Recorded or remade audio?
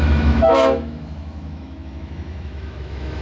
remade